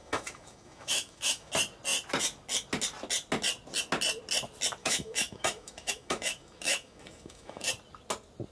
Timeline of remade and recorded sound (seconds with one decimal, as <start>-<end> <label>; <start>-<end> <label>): 0.0-1.5 remade; 1.5-4.8 recorded; 4.8-7.7 remade; 7.7-8.5 recorded